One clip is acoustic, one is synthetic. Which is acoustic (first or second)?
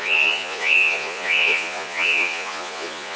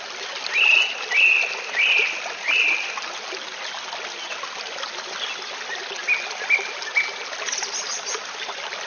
second